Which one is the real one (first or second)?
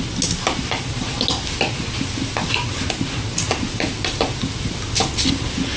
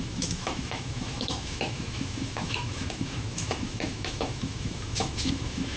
first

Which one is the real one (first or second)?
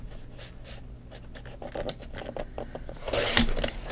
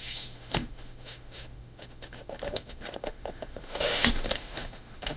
first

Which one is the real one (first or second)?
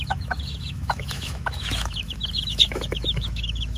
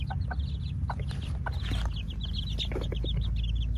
second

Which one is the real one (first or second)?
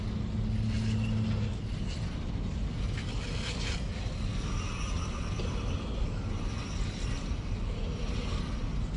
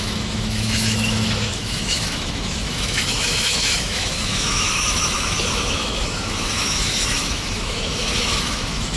first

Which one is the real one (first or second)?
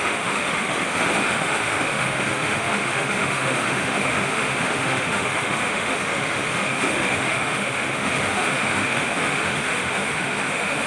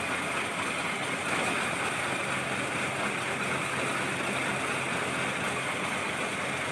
second